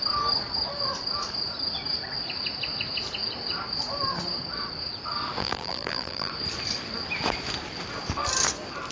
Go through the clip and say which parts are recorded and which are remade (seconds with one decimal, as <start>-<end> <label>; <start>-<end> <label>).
0.0-5.4 recorded; 5.4-6.3 remade; 6.3-8.9 recorded